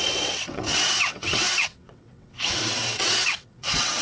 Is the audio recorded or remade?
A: remade